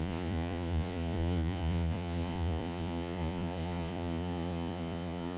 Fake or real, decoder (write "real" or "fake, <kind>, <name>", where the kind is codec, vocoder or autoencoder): fake, vocoder, Vocos